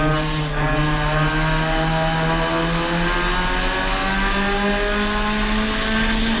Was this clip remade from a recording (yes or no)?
no